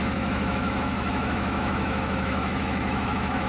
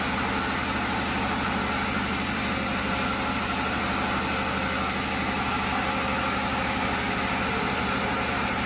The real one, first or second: second